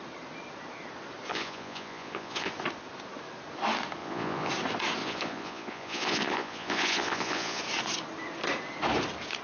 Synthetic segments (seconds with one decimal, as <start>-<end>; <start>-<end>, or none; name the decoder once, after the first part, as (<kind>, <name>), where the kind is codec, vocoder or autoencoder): 1.3-2.5 (vocoder, Vocos); 4.0-4.5; 5.0-7.6